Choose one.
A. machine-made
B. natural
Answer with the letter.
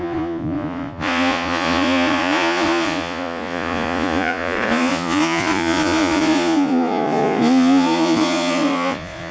A